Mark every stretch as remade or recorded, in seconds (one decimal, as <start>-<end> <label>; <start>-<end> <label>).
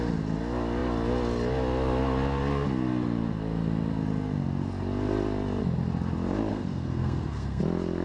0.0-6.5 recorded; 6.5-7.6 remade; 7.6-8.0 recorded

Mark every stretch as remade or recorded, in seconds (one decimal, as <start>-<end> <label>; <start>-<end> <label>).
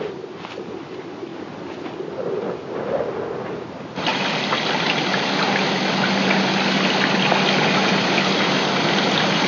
0.0-9.5 recorded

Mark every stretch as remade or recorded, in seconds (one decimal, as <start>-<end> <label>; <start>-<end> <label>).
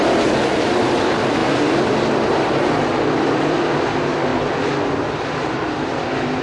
0.0-6.4 recorded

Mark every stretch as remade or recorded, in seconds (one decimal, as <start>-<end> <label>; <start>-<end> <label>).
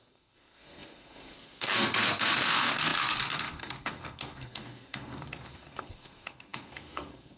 0.0-7.4 remade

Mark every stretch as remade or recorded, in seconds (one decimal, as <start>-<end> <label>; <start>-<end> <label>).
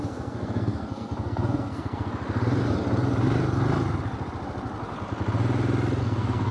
0.0-2.1 remade; 2.1-6.0 recorded; 6.0-6.5 remade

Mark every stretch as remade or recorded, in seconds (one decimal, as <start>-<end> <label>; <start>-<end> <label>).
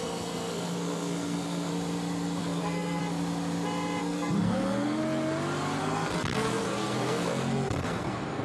0.0-1.7 remade; 1.7-2.4 recorded; 2.4-3.0 remade; 3.0-4.0 recorded; 4.0-5.0 remade; 5.0-5.8 recorded; 5.8-8.4 remade